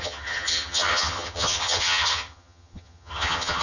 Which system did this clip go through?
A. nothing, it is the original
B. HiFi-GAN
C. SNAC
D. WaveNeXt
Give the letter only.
B